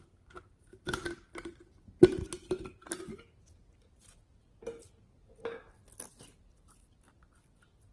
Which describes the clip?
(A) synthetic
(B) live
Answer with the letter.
B